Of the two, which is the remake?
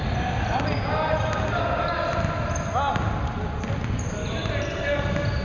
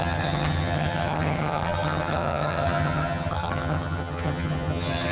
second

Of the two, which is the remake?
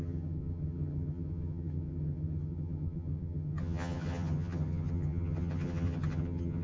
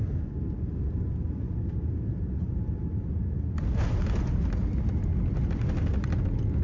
first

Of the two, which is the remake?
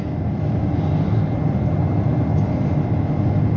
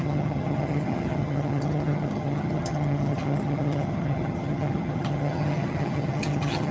second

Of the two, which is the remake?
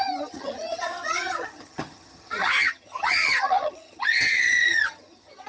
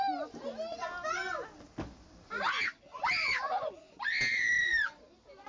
first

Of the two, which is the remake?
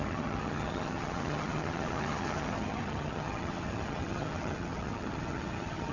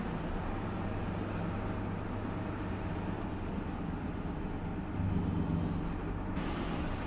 first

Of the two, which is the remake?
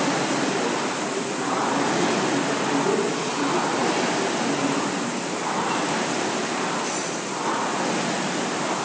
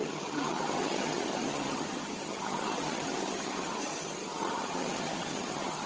second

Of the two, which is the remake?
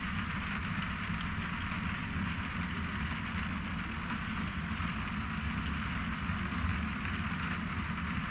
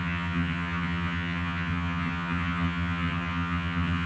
second